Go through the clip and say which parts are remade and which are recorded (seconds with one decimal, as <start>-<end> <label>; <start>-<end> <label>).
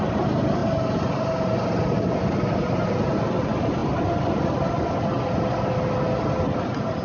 0.0-7.0 recorded